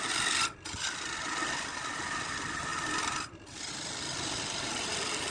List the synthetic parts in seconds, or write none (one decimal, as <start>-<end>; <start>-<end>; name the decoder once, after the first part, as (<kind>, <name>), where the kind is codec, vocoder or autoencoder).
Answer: 2.7-3.7 (vocoder, BigVGAN v2)